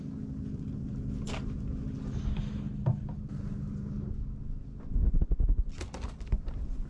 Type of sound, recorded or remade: recorded